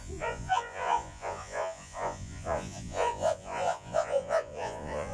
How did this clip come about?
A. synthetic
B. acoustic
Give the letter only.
A